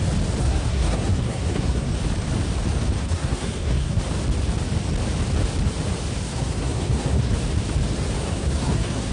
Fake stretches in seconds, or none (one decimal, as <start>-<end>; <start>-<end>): 0.4-1.9; 3.0-4.0; 6.2-7.3; 8.2-9.1